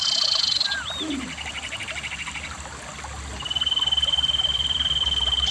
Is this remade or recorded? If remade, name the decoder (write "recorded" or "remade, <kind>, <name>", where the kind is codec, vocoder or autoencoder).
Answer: recorded